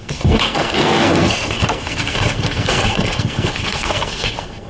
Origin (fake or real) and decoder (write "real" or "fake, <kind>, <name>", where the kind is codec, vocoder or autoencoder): fake, codec, SNAC